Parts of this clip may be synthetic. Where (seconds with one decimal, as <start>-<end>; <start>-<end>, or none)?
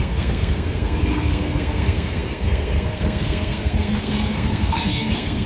0.0-5.5